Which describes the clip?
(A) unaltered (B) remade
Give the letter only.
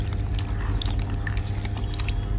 A